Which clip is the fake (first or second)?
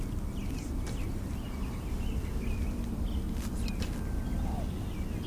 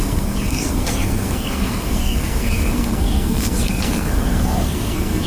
second